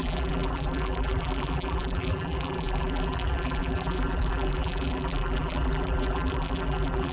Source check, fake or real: fake